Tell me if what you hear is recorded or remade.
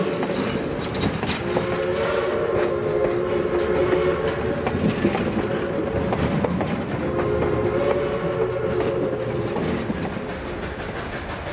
recorded